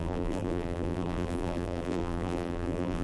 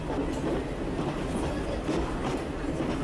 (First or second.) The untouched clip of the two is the second